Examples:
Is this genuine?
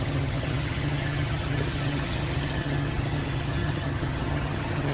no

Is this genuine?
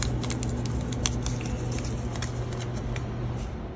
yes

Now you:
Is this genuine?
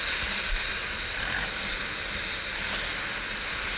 yes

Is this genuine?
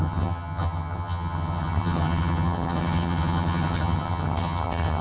no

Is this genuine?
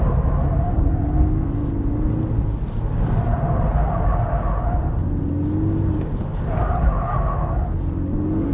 yes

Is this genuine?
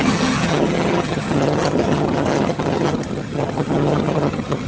no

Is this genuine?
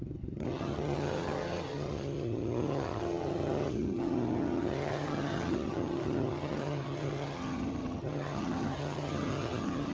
no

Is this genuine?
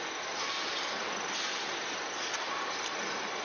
yes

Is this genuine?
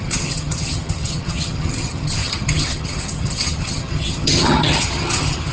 no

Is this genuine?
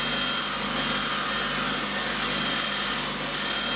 yes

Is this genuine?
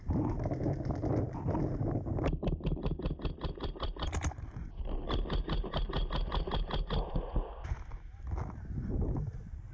yes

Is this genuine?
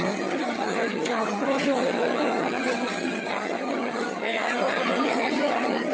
no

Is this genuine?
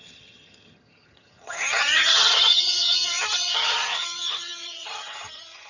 no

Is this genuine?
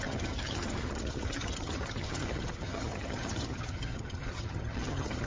no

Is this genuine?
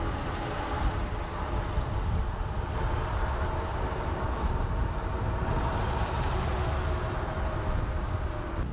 yes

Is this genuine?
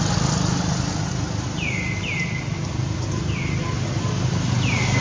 yes